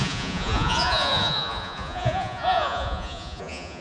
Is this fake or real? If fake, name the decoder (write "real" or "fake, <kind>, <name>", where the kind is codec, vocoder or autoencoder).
fake, vocoder, Vocos